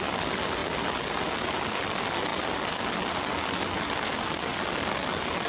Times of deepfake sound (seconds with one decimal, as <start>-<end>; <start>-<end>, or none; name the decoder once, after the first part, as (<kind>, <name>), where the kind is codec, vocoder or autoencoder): none